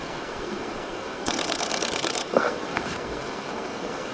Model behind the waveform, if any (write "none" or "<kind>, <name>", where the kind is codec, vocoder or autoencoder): codec, SNAC